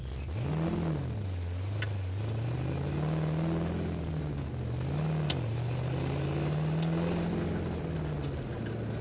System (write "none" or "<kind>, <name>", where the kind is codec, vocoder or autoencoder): none